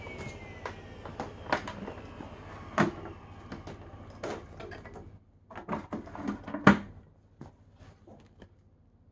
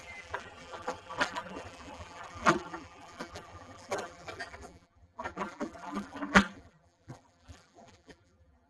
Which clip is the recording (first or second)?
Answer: first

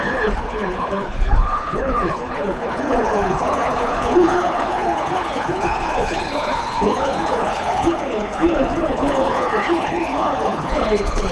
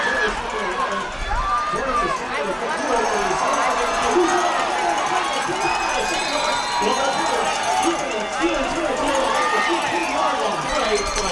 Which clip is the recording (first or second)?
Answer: second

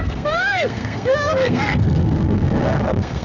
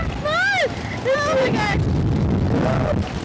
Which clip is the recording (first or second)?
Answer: second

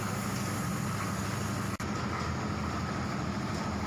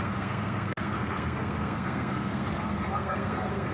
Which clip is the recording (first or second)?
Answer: first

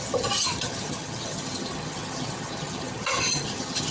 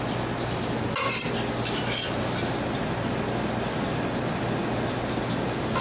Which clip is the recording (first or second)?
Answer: second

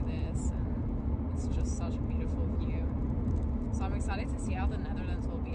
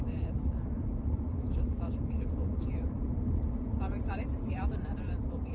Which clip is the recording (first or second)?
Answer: first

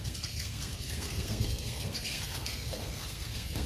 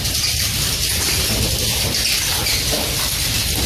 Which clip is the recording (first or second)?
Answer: second